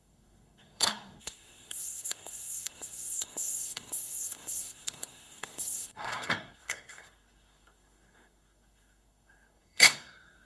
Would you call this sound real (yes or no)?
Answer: no